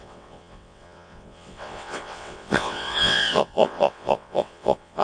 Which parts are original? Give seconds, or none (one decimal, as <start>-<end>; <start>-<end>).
none